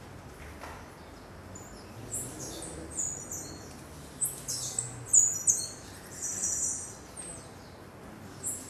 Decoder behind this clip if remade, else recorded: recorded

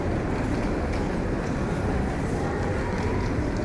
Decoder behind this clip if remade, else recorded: recorded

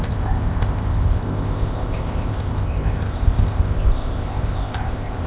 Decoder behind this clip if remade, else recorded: remade, codec, ZipCodec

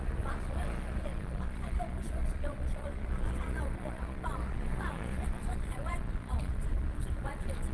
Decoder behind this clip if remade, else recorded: remade, vocoder, Vocos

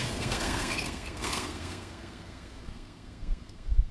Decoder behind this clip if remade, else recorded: remade, codec, SNAC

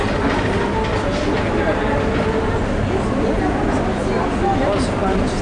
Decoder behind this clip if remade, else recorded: recorded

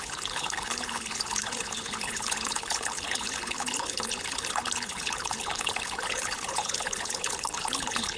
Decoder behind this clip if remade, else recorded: remade, codec, HILCodec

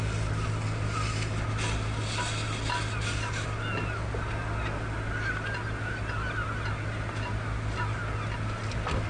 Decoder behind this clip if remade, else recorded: recorded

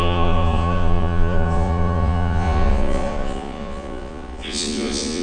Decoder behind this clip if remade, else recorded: remade, vocoder, Vocos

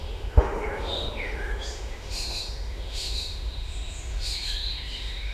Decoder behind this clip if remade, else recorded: remade, autoencoder, DAC-VAE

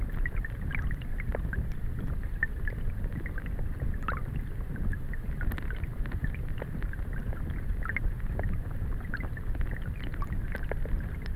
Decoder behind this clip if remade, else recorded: recorded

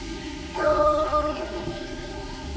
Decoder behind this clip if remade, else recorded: remade, codec, SNAC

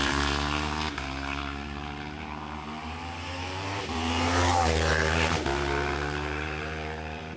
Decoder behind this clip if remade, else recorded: remade, vocoder, BigVGAN v2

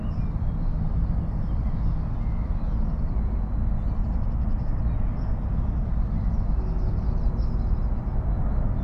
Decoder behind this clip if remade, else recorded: recorded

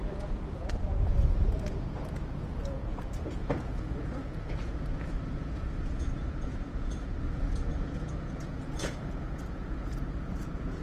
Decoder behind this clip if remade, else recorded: remade, vocoder, Vocos